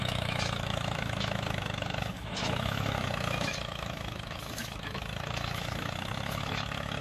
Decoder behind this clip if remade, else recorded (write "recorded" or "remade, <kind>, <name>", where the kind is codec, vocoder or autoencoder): remade, autoencoder, DAC-VAE